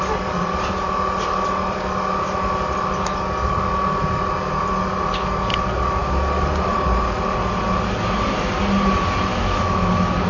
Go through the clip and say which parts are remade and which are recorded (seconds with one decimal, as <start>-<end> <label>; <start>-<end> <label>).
0.0-9.3 recorded; 9.3-9.9 remade; 9.9-10.3 recorded